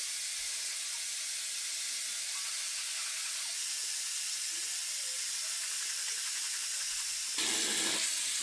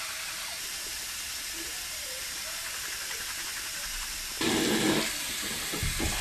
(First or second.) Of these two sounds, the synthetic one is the second